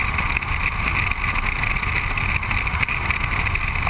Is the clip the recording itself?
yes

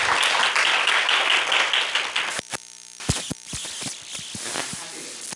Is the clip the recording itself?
yes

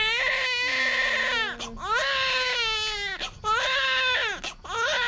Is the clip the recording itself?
yes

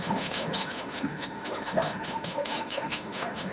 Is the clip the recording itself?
no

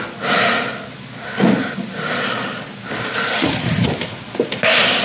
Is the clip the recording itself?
yes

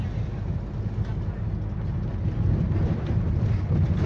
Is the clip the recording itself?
yes